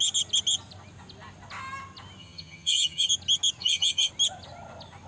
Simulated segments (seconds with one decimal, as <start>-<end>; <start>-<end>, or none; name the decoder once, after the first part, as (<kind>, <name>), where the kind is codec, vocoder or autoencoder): 2.2-3.1 (vocoder, HiFi-GAN); 3.6-4.1